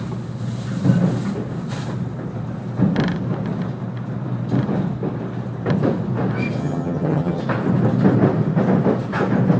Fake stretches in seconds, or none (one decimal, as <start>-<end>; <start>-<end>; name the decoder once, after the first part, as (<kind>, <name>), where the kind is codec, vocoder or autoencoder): 6.6-7.4 (vocoder, HiFi-GAN)

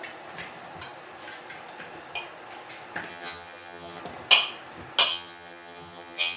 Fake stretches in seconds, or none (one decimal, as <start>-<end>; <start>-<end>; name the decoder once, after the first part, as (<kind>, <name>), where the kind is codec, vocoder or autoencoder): 3.1-4.0 (vocoder, HiFi-GAN); 5.1-6.4